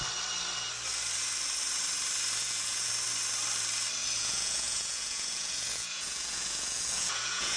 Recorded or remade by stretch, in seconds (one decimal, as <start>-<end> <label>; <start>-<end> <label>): 0.0-2.4 recorded; 2.4-2.9 remade; 2.9-4.2 recorded; 4.2-7.6 remade